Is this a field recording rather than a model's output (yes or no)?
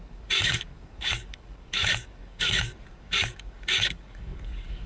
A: no